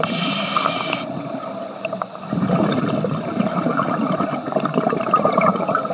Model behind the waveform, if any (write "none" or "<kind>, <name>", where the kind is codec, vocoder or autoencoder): none